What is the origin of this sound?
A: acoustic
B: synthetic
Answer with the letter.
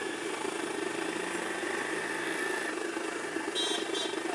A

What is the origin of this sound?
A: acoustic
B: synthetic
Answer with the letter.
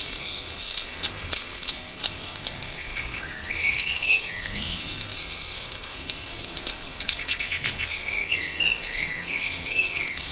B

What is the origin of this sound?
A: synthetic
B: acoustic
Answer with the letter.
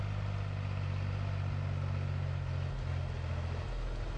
B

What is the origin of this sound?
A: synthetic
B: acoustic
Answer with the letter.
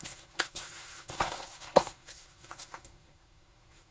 A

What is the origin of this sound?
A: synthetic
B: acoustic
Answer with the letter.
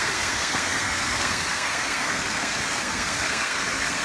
A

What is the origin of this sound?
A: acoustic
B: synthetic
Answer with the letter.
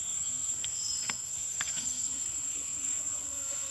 B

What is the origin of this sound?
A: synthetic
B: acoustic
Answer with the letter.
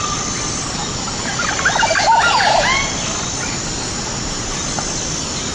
B